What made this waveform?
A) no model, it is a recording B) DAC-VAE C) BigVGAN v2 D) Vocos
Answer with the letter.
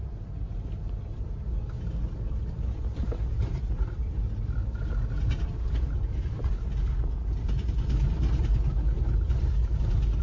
A